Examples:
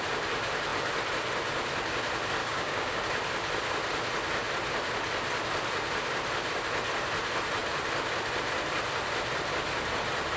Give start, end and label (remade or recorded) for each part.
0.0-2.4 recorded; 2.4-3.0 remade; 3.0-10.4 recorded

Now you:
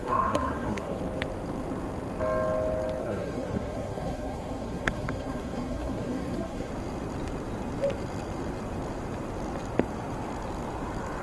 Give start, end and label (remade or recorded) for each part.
0.0-1.0 remade; 1.0-3.0 recorded; 3.0-6.7 remade; 6.7-11.2 recorded

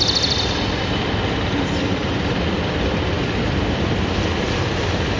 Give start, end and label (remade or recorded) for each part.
0.0-5.2 recorded

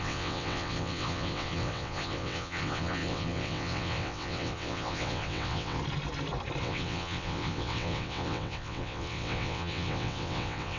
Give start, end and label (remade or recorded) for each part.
0.0-5.8 remade; 5.8-6.6 recorded; 6.6-10.8 remade

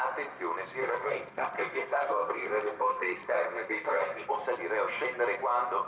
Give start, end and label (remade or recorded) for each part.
0.0-0.8 recorded; 0.8-4.3 remade; 4.3-5.9 recorded

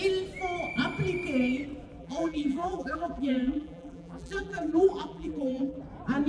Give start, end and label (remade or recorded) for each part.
0.0-2.0 recorded; 2.0-5.8 remade; 5.8-6.3 recorded

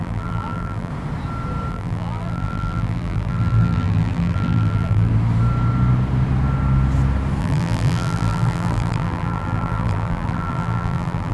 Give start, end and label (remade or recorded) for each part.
0.0-0.9 remade; 0.9-1.7 recorded; 1.7-5.1 remade; 5.1-7.4 recorded; 7.4-11.3 remade

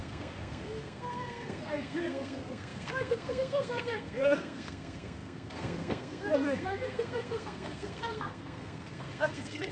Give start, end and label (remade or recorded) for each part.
0.0-9.7 remade